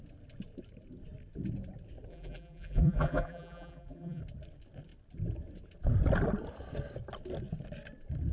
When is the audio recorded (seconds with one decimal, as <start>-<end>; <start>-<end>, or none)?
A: 0.0-2.1; 4.2-8.3